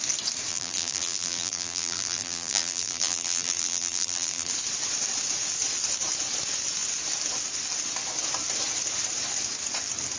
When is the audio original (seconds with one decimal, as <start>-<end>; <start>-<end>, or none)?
0.0-0.5; 4.5-10.2